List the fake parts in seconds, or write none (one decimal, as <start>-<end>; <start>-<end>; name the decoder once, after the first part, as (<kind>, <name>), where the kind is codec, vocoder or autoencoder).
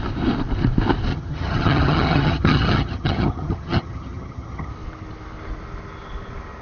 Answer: 1.1-4.7 (vocoder, HiFi-GAN)